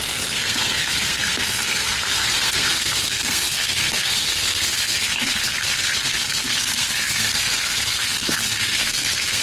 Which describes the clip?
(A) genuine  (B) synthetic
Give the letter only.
B